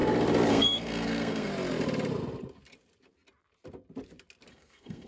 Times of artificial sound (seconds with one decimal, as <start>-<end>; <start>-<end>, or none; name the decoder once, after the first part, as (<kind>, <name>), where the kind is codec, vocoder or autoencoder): 0.5-1.5 (codec, SNAC); 4.5-5.1

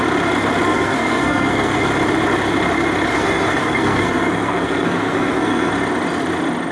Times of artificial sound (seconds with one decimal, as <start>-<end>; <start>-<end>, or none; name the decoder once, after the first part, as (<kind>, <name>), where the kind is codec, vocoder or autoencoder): 0.7-1.8 (codec, SNAC); 3.1-5.7

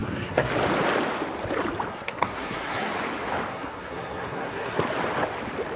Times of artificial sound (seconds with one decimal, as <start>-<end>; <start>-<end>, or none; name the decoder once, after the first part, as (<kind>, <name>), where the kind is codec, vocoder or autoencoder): 0.0-0.5 (codec, SNAC); 1.9-2.9; 3.5-4.8

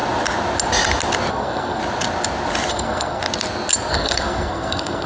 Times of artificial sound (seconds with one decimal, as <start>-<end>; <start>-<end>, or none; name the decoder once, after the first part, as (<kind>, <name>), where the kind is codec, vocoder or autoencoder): 1.3-1.8 (codec, SNAC); 2.7-3.2; 3.9-5.1

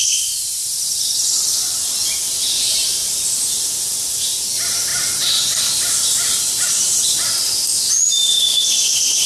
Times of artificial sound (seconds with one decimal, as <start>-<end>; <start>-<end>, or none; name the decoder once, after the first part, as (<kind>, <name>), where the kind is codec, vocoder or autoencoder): none